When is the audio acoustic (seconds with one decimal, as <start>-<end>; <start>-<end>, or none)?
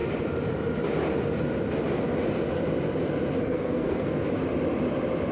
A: 0.0-3.4; 4.2-5.3